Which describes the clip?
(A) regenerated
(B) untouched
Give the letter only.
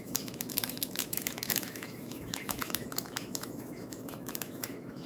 A